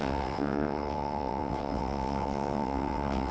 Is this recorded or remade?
remade